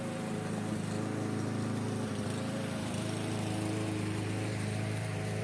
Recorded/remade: remade